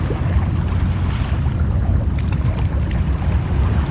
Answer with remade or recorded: recorded